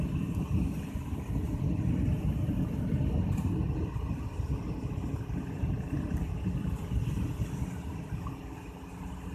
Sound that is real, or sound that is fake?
real